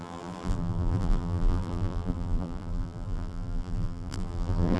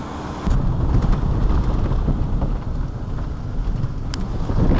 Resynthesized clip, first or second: first